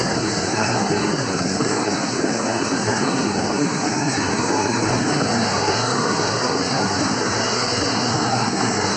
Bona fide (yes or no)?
no